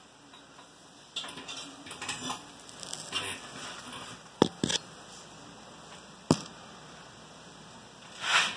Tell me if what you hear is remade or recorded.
recorded